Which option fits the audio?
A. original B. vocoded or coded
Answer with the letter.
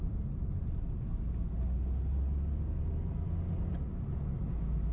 A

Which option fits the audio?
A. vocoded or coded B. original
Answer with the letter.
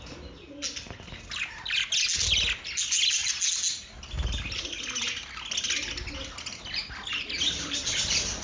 B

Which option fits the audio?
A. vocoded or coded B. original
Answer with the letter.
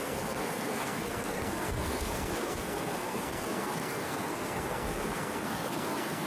A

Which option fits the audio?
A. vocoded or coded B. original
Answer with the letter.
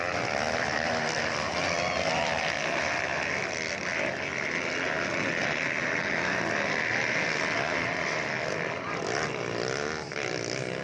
B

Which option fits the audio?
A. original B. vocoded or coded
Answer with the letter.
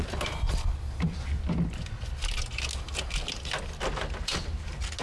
A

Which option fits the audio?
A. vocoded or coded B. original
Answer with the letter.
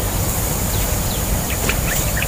A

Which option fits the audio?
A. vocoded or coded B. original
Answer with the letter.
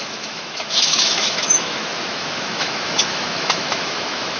A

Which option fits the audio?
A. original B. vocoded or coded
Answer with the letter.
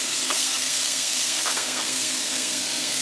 B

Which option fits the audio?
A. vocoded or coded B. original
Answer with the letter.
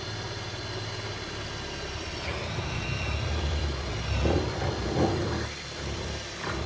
A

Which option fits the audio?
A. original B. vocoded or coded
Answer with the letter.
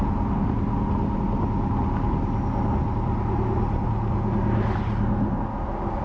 A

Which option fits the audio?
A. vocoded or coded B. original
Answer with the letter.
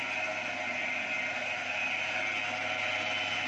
B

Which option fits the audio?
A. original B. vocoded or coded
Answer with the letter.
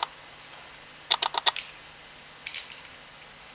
A